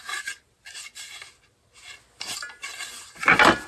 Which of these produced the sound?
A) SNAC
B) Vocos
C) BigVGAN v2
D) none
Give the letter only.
D